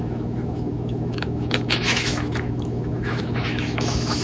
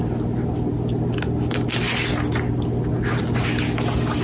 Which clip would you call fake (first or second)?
first